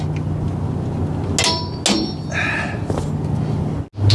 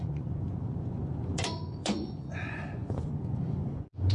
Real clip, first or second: first